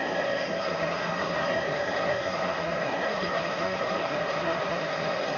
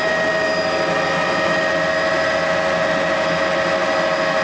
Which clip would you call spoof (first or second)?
first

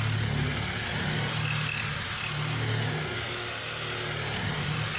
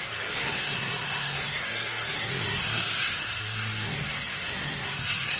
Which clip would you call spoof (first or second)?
second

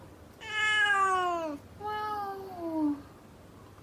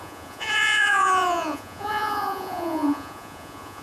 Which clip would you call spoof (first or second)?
second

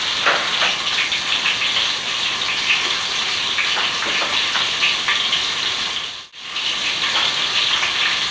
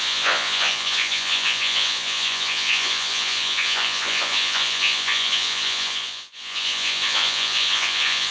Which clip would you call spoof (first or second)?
second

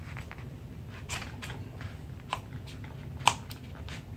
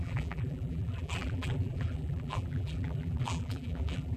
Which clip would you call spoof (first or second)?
second